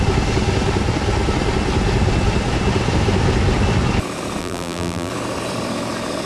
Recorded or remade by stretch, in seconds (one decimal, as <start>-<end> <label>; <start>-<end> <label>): 0.0-4.4 recorded; 4.4-5.1 remade; 5.1-6.3 recorded